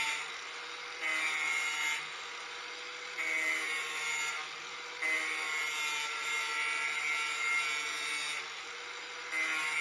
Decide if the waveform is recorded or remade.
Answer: recorded